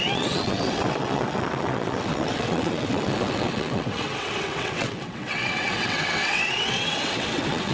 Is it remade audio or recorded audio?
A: remade